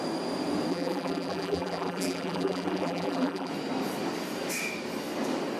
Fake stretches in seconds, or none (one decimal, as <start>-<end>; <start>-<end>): 0.7-3.5